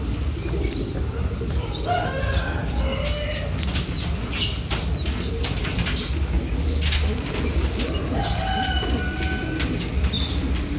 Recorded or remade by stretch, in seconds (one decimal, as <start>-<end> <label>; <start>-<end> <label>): 0.0-10.8 recorded